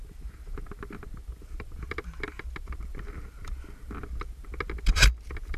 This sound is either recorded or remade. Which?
recorded